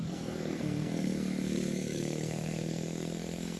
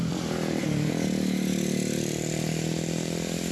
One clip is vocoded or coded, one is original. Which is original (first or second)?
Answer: second